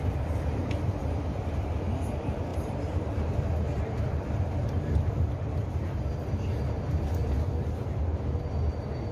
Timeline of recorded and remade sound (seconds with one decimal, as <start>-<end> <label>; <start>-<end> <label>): 0.0-2.5 recorded; 2.5-6.1 remade; 6.1-9.1 recorded